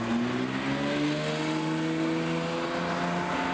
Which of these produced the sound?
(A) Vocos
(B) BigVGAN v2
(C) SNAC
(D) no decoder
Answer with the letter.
D